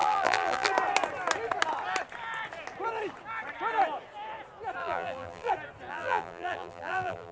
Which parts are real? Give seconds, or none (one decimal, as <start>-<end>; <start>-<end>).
0.7-4.8; 5.5-5.9